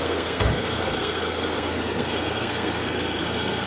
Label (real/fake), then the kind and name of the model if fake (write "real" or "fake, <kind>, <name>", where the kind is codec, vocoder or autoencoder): fake, codec, SNAC